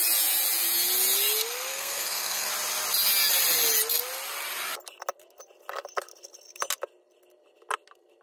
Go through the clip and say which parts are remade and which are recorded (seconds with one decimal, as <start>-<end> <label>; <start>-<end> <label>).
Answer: 0.0-1.7 recorded; 1.7-2.5 remade; 2.5-8.2 recorded